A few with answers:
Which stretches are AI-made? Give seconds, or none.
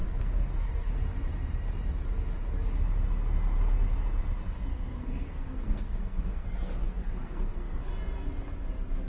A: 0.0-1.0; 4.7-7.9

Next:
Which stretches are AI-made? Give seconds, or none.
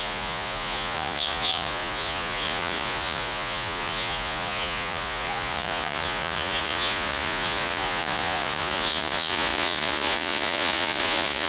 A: 0.0-11.5